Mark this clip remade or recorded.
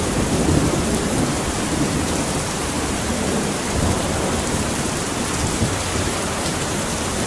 remade